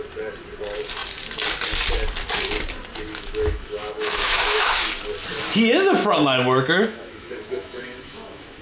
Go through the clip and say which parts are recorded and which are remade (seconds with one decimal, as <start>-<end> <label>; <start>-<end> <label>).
0.0-3.1 recorded; 3.1-4.9 remade; 4.9-6.0 recorded; 6.0-8.6 remade